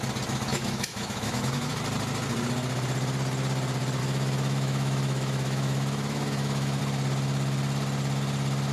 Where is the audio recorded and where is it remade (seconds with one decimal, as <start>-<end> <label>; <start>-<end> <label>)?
0.0-0.5 recorded; 0.5-1.7 remade; 1.7-4.0 recorded; 4.0-6.8 remade; 6.8-8.7 recorded